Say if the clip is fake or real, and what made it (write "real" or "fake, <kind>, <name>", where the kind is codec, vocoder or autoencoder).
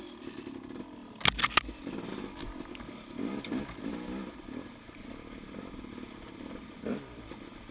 real